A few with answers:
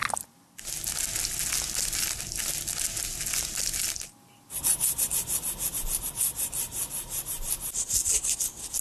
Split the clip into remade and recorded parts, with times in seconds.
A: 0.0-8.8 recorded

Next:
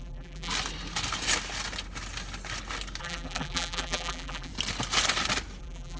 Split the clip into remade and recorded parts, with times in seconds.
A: 0.0-0.5 remade; 0.5-3.0 recorded; 3.0-4.5 remade; 4.5-5.6 recorded; 5.6-6.0 remade

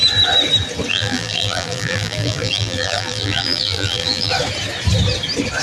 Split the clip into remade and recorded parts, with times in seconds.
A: 0.0-0.9 recorded; 0.9-4.3 remade; 4.3-5.6 recorded

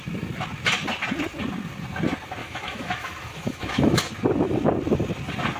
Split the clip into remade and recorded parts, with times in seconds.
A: 0.0-2.4 recorded; 2.4-4.1 remade; 4.1-5.6 recorded

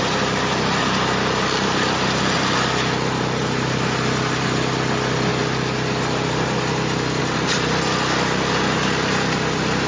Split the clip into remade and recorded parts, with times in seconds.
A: 0.0-9.9 recorded

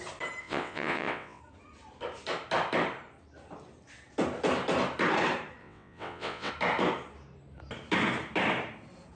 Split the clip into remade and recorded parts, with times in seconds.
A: 0.0-0.4 recorded; 0.4-1.4 remade; 1.4-5.6 recorded; 5.6-6.5 remade; 6.5-9.2 recorded